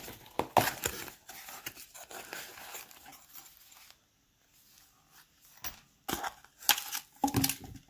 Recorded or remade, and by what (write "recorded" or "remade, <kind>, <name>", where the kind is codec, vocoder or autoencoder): recorded